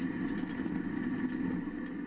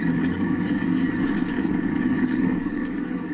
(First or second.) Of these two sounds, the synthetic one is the second